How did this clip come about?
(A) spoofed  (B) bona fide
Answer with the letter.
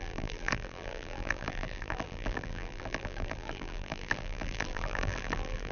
A